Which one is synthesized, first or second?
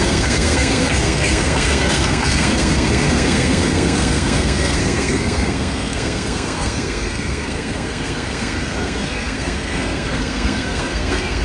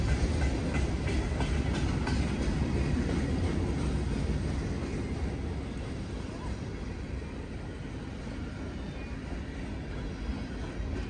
first